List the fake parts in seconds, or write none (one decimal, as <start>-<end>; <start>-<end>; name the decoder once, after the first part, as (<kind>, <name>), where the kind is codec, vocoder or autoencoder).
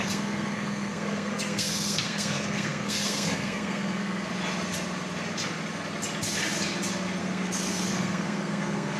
0.0-4.3 (codec, SNAC); 7.2-9.0